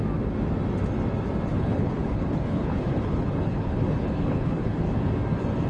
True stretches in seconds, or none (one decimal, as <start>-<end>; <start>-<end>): 0.0-1.5; 4.9-5.7